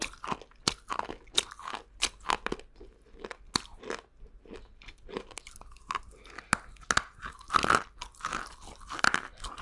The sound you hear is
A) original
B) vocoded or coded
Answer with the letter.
A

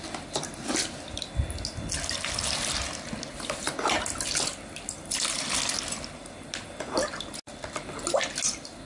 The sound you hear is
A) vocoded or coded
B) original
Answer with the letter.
B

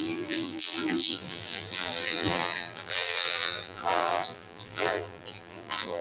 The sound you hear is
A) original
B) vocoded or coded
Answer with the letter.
B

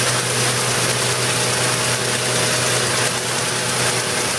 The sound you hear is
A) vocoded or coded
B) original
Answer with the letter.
B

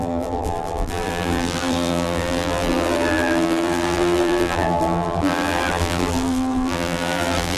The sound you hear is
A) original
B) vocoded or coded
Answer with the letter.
B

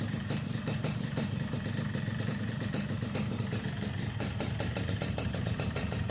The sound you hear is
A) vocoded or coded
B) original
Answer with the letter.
A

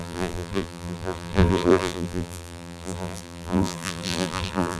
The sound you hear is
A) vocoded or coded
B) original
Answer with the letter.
A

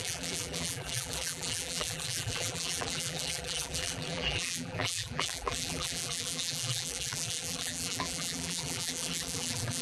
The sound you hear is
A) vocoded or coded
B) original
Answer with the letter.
A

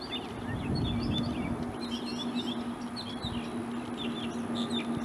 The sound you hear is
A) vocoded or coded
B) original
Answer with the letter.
B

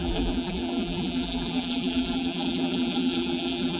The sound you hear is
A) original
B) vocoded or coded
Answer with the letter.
B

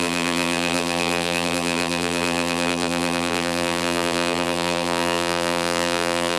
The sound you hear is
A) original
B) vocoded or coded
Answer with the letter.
B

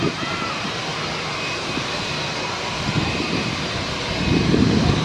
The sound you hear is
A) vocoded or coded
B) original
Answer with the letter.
A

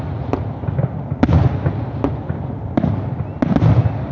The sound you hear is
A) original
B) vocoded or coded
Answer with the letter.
A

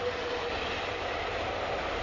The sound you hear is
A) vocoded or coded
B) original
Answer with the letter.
A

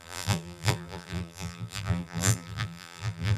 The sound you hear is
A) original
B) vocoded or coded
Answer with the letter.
B